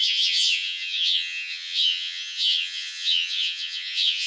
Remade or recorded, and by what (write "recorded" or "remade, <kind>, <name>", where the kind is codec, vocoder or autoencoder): remade, vocoder, HiFi-GAN